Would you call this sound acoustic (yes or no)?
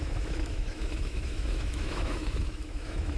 no